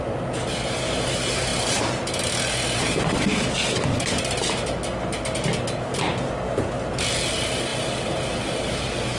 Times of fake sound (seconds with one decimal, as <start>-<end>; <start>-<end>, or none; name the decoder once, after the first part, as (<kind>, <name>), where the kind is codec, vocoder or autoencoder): none